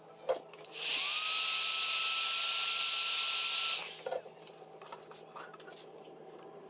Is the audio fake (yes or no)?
no